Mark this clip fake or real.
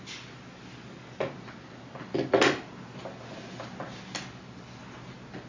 real